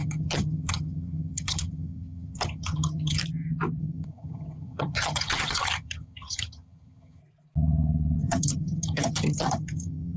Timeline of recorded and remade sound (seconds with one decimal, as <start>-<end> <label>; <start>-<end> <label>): 0.0-3.2 remade; 3.2-3.8 recorded; 3.8-7.2 remade; 7.2-8.2 recorded; 8.2-10.2 remade